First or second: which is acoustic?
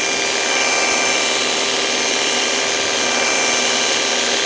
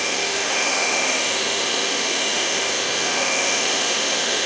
first